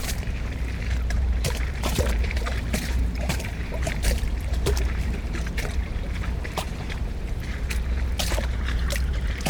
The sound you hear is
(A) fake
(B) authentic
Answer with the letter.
A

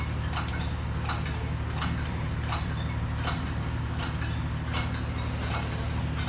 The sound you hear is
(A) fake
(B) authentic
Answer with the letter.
B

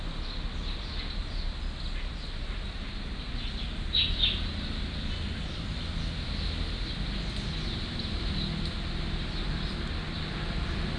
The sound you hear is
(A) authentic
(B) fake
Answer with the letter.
A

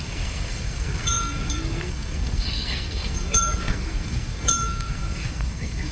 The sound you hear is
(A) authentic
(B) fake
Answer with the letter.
B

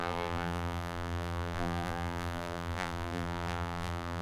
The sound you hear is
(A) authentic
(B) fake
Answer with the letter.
B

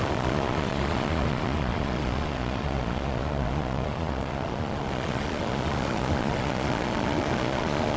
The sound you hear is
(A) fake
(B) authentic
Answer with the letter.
A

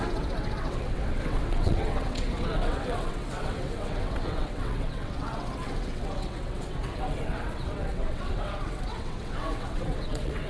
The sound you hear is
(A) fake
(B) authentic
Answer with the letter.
A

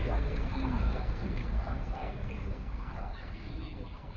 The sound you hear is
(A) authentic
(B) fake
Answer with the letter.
B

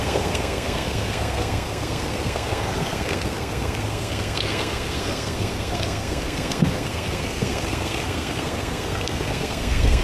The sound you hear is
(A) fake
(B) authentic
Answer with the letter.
A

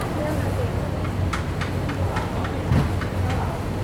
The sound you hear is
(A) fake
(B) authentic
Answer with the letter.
B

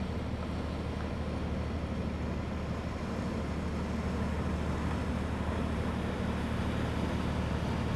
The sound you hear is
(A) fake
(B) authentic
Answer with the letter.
B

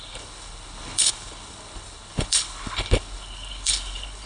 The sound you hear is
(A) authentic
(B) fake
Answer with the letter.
B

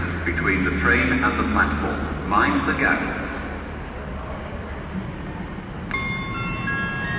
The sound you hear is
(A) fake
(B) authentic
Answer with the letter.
B